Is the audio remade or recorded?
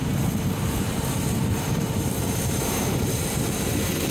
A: remade